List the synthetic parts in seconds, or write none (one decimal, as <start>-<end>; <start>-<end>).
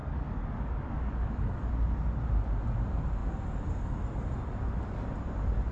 0.0-1.7